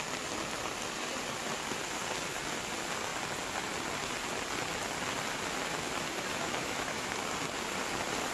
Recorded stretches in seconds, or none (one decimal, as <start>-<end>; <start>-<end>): 0.0-6.3; 7.1-8.3